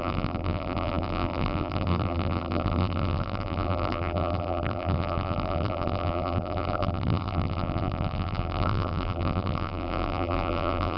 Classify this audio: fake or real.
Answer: fake